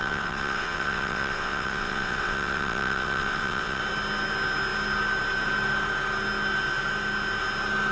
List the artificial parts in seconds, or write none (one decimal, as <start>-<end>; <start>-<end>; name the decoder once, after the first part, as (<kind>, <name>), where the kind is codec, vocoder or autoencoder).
0.0-3.8 (vocoder, WaveNeXt)

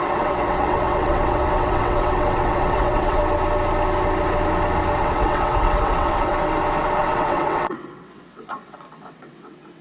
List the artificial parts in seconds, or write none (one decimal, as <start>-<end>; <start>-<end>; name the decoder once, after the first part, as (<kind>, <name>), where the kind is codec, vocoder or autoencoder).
0.0-3.2 (vocoder, WaveNeXt); 5.0-6.3; 7.0-9.8

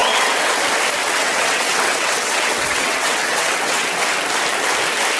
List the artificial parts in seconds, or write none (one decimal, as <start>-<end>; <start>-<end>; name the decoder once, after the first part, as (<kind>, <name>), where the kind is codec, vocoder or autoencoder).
0.0-0.6 (vocoder, WaveNeXt); 1.0-4.1

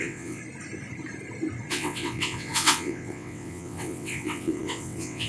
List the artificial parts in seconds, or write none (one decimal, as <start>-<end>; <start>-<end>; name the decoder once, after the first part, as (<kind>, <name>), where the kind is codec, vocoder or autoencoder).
0.0-0.4 (vocoder, WaveNeXt); 1.7-5.3

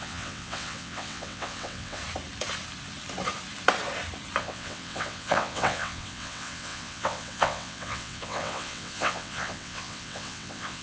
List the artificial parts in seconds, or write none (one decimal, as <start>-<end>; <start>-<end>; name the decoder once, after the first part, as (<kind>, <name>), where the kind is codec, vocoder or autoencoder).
0.0-2.0 (vocoder, WaveNeXt); 4.4-10.8